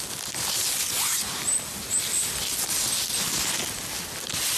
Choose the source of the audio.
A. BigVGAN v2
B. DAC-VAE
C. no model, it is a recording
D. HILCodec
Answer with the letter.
C